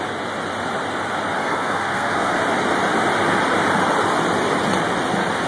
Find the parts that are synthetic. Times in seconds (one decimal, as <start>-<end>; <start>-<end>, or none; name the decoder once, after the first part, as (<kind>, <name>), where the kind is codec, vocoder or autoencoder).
1.4-2.4 (codec, SNAC)